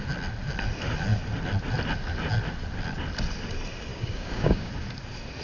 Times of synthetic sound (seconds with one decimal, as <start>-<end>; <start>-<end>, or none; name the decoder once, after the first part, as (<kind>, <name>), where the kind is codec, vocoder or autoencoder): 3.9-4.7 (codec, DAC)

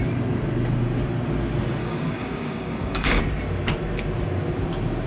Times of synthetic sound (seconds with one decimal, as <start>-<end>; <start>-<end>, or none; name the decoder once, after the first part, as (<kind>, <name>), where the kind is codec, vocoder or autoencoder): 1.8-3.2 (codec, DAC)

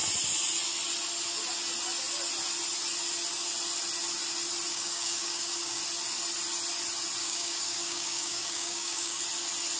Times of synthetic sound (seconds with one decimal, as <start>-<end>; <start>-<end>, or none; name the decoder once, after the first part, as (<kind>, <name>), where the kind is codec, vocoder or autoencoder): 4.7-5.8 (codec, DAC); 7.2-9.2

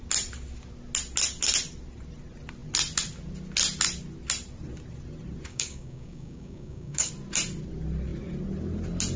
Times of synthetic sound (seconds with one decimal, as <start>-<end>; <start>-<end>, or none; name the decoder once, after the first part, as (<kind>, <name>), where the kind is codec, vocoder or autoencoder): 5.5-7.1 (codec, DAC)

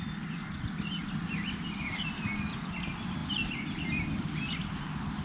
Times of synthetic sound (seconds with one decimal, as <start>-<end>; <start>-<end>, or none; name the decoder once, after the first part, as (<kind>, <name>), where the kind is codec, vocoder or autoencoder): none

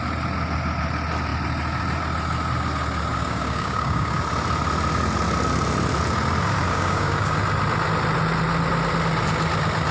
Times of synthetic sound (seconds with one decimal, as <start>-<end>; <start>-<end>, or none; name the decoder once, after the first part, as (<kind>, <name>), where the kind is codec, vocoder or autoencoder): 3.1-4.2 (codec, DAC); 6.7-7.3

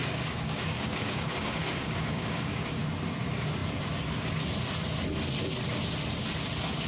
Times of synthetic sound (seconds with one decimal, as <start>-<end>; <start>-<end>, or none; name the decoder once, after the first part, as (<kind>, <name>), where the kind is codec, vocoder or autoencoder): 0.0-2.8 (codec, DAC)

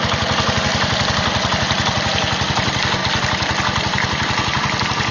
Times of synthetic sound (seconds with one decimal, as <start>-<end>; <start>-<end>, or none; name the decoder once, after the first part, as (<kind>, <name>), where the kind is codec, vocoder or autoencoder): none